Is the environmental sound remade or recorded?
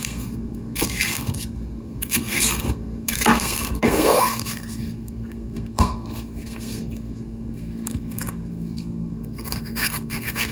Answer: remade